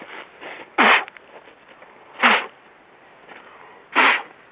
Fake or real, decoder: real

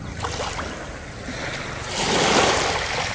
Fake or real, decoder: real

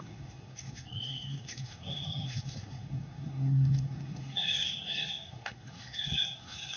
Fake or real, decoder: fake, codec, SNAC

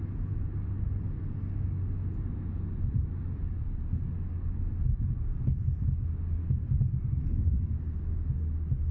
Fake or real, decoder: real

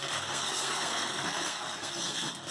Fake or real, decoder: fake, codec, SNAC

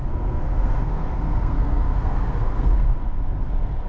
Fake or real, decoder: fake, codec, SNAC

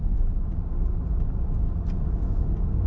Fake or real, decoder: real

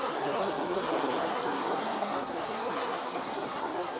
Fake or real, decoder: fake, codec, SNAC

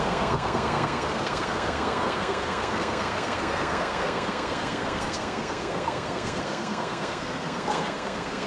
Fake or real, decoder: fake, codec, SNAC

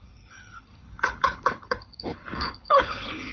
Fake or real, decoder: fake, codec, HILCodec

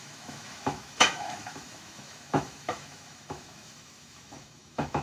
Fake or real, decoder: fake, autoencoder, DAC-VAE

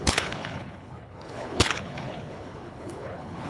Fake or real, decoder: fake, codec, HILCodec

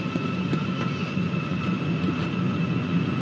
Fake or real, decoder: fake, vocoder, Vocos